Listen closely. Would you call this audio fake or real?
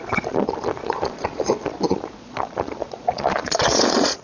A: fake